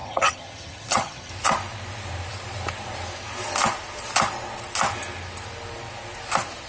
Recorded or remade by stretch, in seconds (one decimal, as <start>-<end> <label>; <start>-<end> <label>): 0.0-1.3 remade; 1.3-6.7 recorded